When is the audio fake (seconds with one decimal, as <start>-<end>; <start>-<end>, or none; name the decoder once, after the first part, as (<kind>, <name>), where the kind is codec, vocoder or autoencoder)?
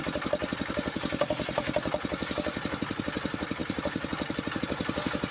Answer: none